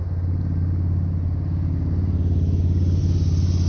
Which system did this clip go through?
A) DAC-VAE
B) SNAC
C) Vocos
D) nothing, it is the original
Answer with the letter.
D